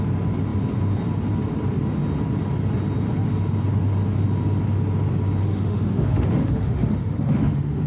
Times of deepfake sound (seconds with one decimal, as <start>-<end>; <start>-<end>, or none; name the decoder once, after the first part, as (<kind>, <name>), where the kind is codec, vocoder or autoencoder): 5.4-7.9 (autoencoder, DAC-VAE)